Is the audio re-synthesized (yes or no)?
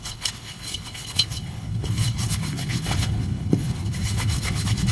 yes